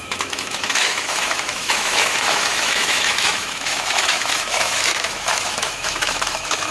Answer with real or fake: fake